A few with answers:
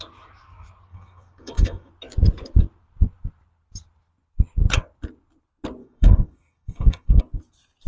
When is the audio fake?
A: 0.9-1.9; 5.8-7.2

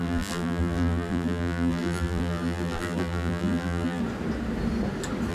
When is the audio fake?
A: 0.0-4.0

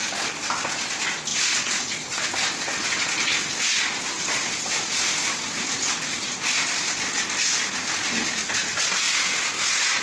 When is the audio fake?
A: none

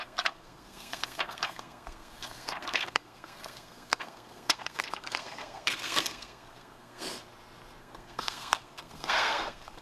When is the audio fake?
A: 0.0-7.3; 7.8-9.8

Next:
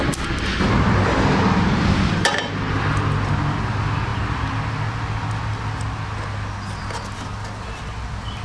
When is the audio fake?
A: none

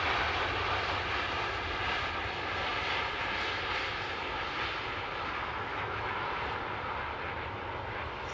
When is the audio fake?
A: 5.7-6.3

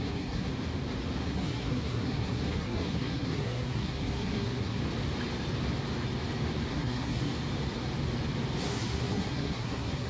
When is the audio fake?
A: 0.0-0.5; 1.2-4.8; 6.7-7.3; 8.6-10.1